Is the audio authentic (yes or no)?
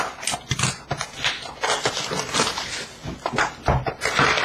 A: yes